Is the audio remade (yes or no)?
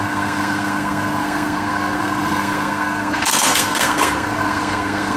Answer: yes